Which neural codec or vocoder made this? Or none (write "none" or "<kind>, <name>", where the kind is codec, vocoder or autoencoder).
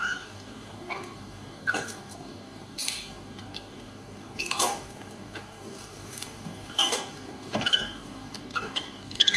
codec, DAC